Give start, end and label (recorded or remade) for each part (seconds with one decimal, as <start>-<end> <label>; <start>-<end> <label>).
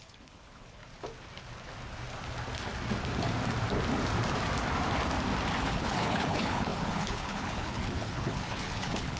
0.0-0.8 remade; 0.8-5.6 recorded; 5.6-9.2 remade